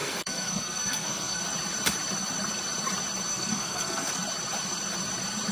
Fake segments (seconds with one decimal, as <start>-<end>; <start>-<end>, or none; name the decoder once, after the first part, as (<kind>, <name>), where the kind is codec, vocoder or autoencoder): 0.0-1.4 (codec, SNAC); 3.3-4.1